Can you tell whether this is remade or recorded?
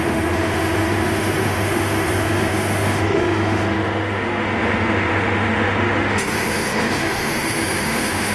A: remade